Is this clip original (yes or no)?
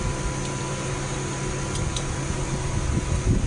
yes